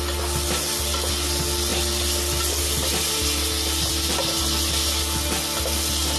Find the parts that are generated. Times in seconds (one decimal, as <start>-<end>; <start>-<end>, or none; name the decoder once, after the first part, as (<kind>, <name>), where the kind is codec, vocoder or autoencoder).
none